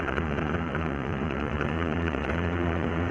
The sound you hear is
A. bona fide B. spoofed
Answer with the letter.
B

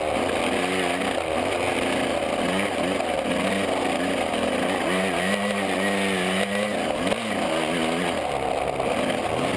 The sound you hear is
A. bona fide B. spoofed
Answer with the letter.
A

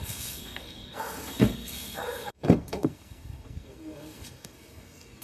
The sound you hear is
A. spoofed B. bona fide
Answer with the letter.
A